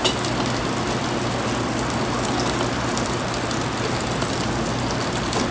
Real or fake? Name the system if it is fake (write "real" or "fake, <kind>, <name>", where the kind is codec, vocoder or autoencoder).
real